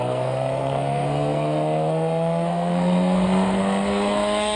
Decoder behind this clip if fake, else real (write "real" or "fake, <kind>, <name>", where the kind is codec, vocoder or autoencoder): fake, codec, SNAC